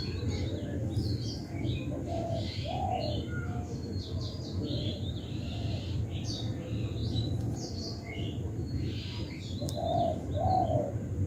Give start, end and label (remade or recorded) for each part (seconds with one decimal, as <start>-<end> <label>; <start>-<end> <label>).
0.0-11.3 recorded